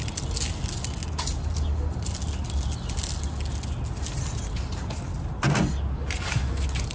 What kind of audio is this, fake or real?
real